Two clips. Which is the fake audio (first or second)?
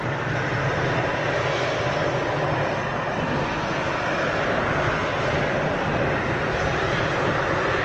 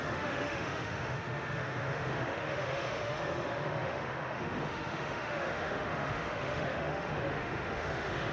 second